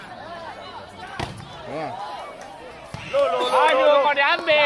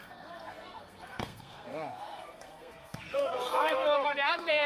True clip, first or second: first